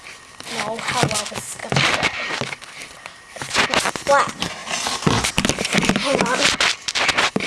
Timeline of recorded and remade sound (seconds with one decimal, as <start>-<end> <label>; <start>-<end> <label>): 0.0-1.6 recorded; 1.6-2.3 remade; 2.3-7.5 recorded

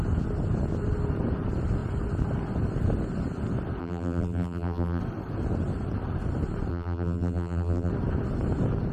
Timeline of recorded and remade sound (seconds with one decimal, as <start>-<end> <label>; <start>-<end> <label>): 0.0-3.8 recorded; 3.8-5.0 remade; 5.0-6.7 recorded; 6.7-7.9 remade; 7.9-8.9 recorded

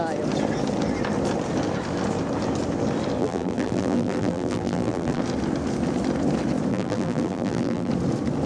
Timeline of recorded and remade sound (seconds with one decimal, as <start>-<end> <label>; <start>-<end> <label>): 0.0-3.2 recorded; 3.2-5.2 remade; 5.2-6.7 recorded; 6.7-7.9 remade; 7.9-8.5 recorded

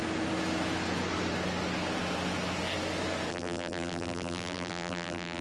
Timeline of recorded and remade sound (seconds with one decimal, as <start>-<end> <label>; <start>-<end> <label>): 0.0-3.3 recorded; 3.3-5.4 remade

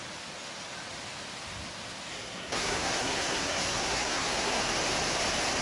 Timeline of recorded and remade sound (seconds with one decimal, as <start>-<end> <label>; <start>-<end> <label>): 0.0-2.1 recorded; 2.1-4.6 remade; 4.6-5.6 recorded